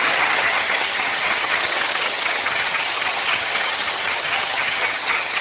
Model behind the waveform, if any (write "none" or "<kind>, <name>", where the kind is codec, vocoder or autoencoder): vocoder, HiFi-GAN